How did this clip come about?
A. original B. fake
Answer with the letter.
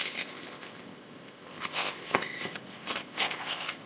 B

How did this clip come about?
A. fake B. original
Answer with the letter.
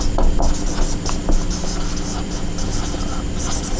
B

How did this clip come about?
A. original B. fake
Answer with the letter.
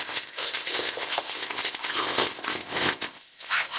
B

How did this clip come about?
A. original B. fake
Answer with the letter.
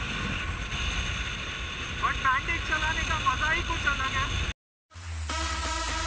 A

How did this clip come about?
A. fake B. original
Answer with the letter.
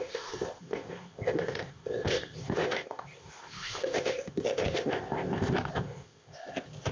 A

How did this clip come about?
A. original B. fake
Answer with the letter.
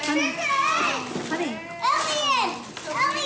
A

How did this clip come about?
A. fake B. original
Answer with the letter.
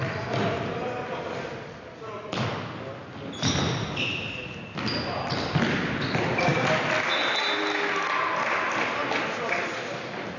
B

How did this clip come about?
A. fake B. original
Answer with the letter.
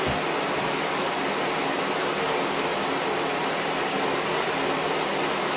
B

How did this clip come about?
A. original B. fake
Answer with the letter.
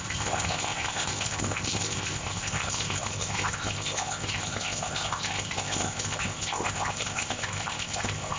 B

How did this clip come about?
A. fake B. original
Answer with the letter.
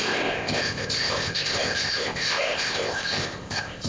A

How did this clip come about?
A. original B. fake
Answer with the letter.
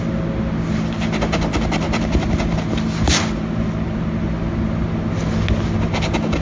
A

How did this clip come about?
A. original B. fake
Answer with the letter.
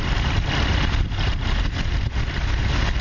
A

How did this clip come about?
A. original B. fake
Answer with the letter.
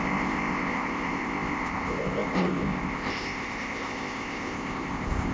B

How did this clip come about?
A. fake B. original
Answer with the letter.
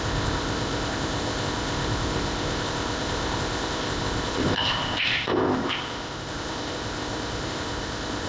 A